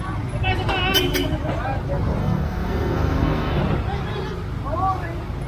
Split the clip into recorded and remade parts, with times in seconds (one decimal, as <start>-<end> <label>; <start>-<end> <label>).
0.0-2.2 recorded; 2.2-3.6 remade; 3.6-5.5 recorded